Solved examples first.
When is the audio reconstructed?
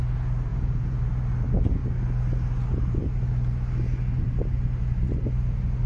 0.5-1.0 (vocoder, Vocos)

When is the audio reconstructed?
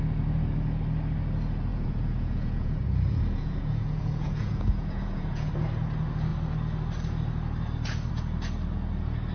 1.7-5.5 (vocoder, Vocos)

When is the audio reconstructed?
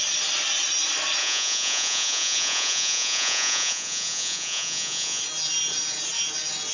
1.2-5.2 (vocoder, Vocos)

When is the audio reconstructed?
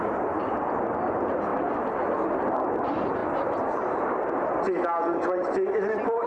none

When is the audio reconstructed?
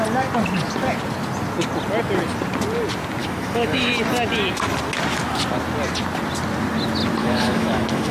3.2-3.9 (autoencoder, DAC-VAE); 7.2-8.1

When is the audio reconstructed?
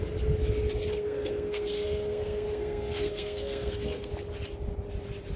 0.9-4.1 (codec, SNAC)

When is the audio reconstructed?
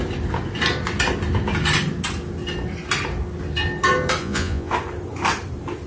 4.2-4.7 (vocoder, Vocos)